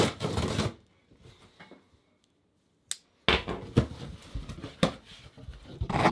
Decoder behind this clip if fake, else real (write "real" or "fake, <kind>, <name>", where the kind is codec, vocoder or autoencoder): real